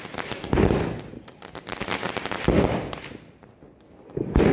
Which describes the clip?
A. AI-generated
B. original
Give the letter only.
B